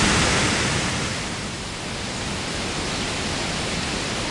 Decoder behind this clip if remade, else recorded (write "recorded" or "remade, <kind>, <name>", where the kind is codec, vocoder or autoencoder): recorded